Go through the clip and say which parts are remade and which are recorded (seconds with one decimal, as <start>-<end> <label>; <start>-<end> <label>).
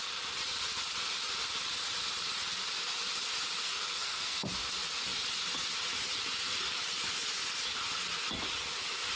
0.0-3.6 recorded; 3.6-4.5 remade; 4.5-9.2 recorded